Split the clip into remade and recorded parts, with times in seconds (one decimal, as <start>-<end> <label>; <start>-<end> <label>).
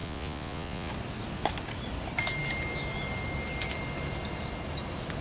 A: 0.0-0.9 remade; 0.9-5.2 recorded